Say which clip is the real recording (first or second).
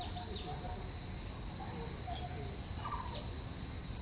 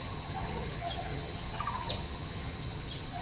first